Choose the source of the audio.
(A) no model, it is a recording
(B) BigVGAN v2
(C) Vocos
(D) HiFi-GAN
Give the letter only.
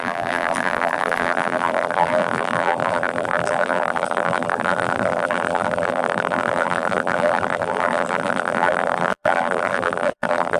B